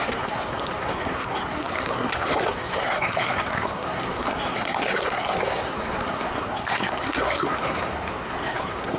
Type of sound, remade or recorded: remade